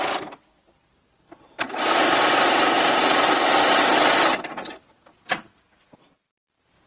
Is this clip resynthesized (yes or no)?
no